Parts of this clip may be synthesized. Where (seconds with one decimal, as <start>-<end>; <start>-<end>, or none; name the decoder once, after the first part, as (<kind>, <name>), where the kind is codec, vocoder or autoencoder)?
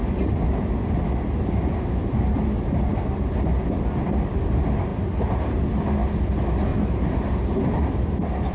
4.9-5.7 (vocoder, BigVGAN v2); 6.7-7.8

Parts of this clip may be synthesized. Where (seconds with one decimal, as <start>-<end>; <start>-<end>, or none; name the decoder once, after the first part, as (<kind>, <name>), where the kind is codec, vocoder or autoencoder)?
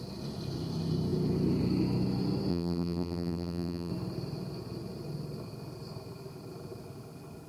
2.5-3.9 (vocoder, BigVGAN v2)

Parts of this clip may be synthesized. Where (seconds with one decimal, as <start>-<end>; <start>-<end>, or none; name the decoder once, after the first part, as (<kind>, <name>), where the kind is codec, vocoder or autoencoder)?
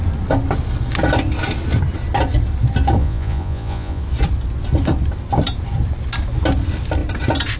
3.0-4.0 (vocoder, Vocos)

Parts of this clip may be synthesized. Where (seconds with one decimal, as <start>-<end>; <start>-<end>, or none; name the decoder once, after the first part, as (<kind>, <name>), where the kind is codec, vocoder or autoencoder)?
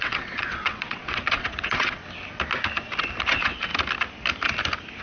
0.0-2.0 (vocoder, WaveNeXt); 3.2-3.7